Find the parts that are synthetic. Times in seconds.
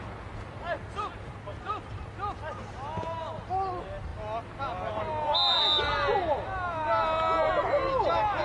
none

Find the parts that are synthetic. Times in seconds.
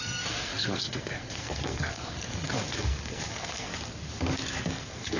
0.0-3.7 (codec, SNAC); 4.6-5.2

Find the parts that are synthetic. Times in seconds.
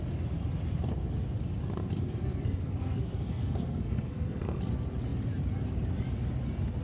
2.2-4.6 (codec, SNAC)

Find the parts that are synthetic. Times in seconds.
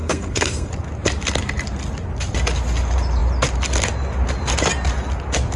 0.0-0.7 (codec, SNAC)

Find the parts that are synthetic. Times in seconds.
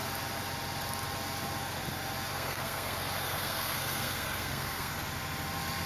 2.3-4.9 (codec, SNAC)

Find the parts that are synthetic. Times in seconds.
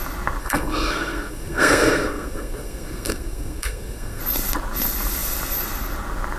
0.4-4.2 (codec, SNAC)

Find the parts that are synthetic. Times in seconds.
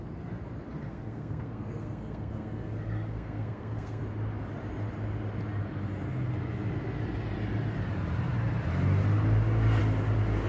0.8-4.0 (codec, SNAC)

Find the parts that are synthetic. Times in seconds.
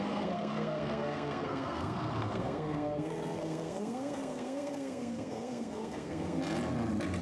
0.0-6.4 (codec, SNAC)